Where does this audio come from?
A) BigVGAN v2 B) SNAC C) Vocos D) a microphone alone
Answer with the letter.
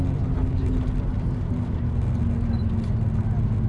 D